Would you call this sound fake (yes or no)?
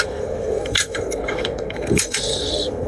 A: yes